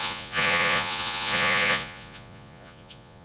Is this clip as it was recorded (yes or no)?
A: no